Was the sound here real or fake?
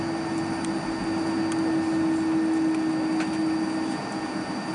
real